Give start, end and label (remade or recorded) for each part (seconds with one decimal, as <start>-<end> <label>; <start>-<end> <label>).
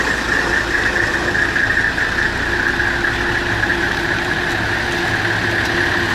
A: 0.0-3.7 recorded; 3.7-4.4 remade; 4.4-6.1 recorded